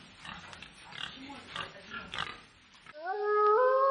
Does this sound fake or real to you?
real